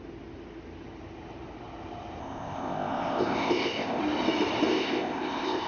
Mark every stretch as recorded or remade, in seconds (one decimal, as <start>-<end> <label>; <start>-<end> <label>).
0.0-2.2 recorded; 2.2-4.0 remade; 4.0-4.7 recorded; 4.7-5.7 remade